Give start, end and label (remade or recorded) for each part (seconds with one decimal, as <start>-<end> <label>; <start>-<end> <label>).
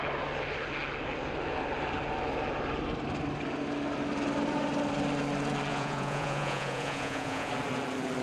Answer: 0.0-5.7 recorded; 5.7-7.5 remade; 7.5-8.2 recorded